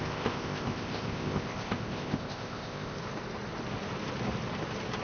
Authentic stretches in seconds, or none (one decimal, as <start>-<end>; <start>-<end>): 3.0-5.0